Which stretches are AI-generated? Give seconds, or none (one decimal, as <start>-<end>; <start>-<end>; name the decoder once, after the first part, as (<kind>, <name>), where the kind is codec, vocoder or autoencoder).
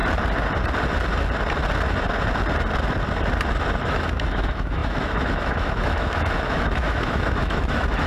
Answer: 3.8-8.1 (autoencoder, DAC-VAE)